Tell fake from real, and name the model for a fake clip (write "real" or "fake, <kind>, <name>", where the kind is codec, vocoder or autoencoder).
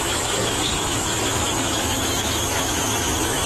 fake, autoencoder, DAC-VAE